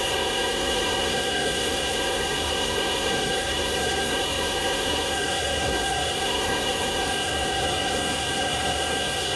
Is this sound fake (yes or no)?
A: yes